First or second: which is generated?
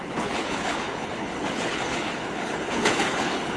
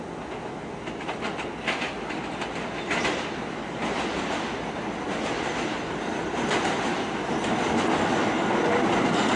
first